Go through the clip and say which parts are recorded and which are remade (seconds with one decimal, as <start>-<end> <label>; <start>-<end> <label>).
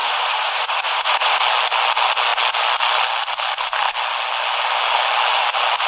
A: 0.0-1.4 remade; 1.4-5.9 recorded